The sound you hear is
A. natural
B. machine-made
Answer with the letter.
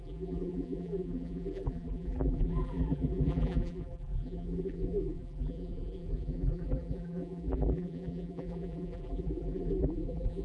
B